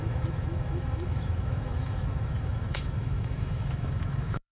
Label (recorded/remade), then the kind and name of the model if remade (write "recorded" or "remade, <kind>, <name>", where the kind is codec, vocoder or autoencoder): remade, autoencoder, DAC-VAE